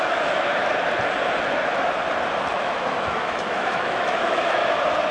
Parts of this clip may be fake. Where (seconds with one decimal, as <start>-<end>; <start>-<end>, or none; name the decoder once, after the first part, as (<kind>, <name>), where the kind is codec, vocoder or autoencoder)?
0.0-0.6 (autoencoder, DAC-VAE); 2.5-4.6

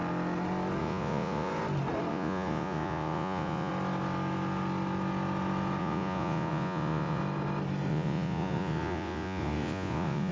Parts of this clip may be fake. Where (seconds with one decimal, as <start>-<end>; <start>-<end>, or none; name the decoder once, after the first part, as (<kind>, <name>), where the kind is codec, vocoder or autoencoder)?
0.8-1.5 (vocoder, Vocos); 2.1-3.7; 5.8-7.2; 7.9-10.3

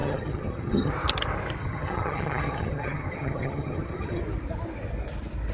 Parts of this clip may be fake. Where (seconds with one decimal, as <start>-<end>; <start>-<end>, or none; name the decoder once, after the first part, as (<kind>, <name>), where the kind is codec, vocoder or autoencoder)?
0.0-0.9 (vocoder, HiFi-GAN); 1.6-4.2

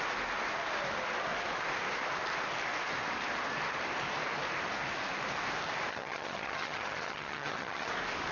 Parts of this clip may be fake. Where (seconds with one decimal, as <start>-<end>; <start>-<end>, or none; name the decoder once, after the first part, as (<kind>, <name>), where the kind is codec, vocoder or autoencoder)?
5.9-7.9 (vocoder, HiFi-GAN)

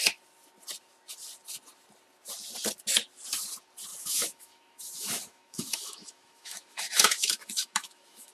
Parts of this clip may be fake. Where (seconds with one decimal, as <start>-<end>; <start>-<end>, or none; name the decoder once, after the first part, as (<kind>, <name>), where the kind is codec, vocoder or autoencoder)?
3.9-8.3 (autoencoder, DAC-VAE)

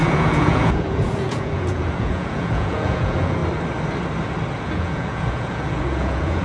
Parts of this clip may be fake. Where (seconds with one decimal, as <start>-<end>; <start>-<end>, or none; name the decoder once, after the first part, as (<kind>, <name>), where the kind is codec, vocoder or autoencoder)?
0.0-3.4 (vocoder, Vocos); 4.6-6.4